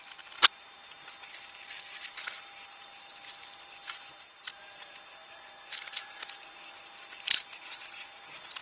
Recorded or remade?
recorded